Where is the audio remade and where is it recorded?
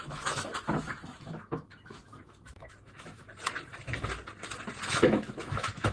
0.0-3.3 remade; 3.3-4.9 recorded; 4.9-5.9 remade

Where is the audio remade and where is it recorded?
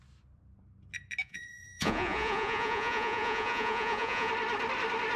0.0-1.2 recorded; 1.2-4.3 remade; 4.3-5.2 recorded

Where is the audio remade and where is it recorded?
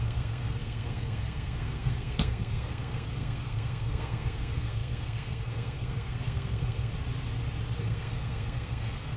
0.0-6.9 remade; 6.9-7.8 recorded; 7.8-9.2 remade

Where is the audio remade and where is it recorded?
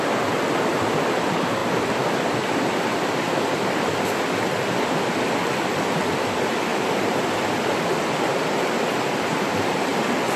0.0-6.7 recorded; 6.7-7.4 remade; 7.4-10.4 recorded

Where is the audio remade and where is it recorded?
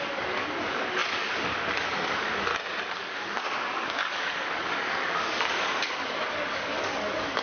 0.0-2.5 remade; 2.5-3.0 recorded; 3.0-7.4 remade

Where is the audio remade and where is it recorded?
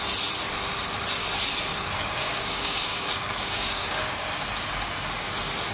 0.0-1.7 recorded; 1.7-4.2 remade; 4.2-5.7 recorded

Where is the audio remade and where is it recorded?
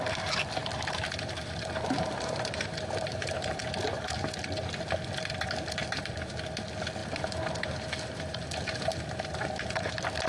0.0-0.6 recorded; 0.6-3.6 remade; 3.6-5.8 recorded; 5.8-6.3 remade; 6.3-7.0 recorded; 7.0-9.9 remade; 9.9-10.3 recorded